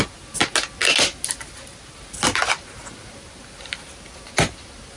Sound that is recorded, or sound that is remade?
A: recorded